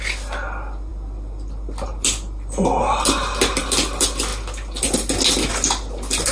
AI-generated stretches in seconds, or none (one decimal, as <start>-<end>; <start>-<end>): none